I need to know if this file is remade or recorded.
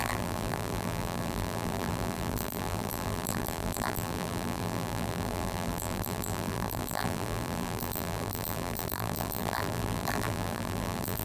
remade